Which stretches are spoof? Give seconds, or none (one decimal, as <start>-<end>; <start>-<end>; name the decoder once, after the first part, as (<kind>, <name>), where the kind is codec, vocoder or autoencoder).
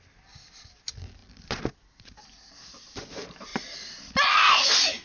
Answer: none